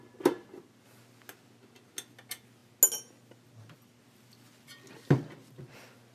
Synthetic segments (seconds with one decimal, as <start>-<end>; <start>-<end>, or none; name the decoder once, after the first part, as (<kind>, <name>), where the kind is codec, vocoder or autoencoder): none